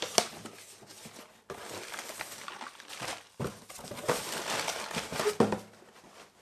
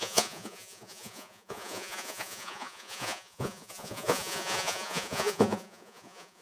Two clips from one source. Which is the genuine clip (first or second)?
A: first